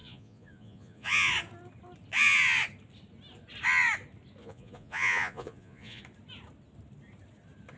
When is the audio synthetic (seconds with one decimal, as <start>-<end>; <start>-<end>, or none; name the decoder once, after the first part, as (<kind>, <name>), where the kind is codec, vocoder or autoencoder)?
0.0-1.3 (vocoder, Vocos); 4.4-6.0